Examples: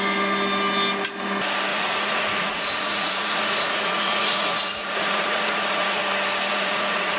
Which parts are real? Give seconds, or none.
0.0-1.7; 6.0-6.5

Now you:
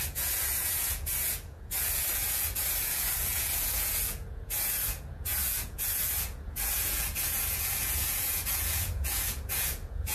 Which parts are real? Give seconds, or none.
none